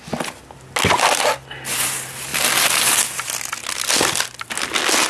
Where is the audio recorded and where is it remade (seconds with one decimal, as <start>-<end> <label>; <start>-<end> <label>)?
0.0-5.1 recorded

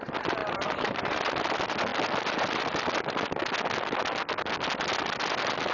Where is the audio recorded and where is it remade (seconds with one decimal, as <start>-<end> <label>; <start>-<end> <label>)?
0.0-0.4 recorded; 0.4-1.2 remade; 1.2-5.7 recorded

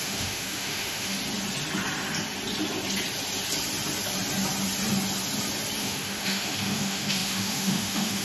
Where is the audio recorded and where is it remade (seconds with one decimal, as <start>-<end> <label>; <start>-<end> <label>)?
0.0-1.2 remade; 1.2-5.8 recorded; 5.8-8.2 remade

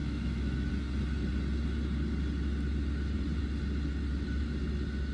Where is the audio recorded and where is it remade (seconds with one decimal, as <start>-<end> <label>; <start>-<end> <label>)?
0.0-0.7 remade; 0.7-5.1 recorded

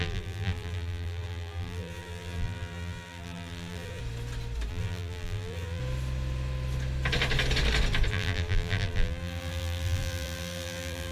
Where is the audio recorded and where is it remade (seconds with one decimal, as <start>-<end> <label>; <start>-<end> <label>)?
0.0-4.0 remade; 4.0-4.7 recorded; 4.7-5.8 remade; 5.8-8.1 recorded; 8.1-11.1 remade

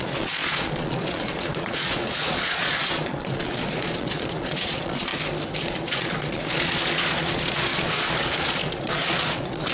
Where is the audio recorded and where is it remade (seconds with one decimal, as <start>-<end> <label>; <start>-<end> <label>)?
0.0-5.1 remade; 5.1-5.6 recorded; 5.6-9.7 remade

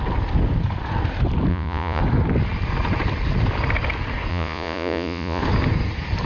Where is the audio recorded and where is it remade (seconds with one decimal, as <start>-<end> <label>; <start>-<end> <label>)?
0.0-1.5 recorded; 1.5-2.0 remade; 2.0-4.3 recorded; 4.3-5.4 remade; 5.4-6.3 recorded